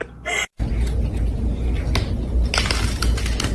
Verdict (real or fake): real